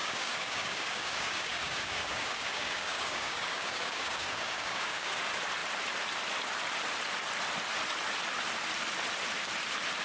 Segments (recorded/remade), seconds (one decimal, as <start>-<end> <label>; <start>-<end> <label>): 0.0-5.1 remade; 5.1-10.0 recorded

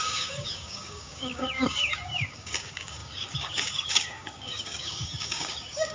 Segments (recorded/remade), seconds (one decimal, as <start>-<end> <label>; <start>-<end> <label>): 0.0-5.9 remade

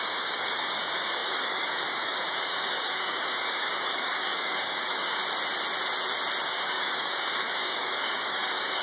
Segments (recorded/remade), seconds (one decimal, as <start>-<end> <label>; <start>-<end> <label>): 0.0-5.2 remade; 5.2-6.5 recorded; 6.5-8.8 remade